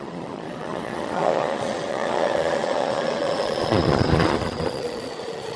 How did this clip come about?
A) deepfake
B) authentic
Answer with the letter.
A